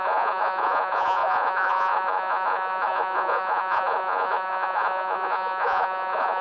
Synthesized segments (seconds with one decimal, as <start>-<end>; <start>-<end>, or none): 0.0-6.4